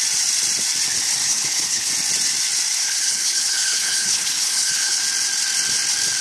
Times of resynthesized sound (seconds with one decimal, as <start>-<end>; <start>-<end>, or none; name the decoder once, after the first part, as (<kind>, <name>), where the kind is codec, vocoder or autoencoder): 1.2-1.9 (codec, HILCodec); 2.8-5.0